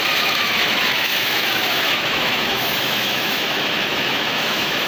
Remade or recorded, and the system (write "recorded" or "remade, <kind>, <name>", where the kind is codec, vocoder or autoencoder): remade, autoencoder, DAC-VAE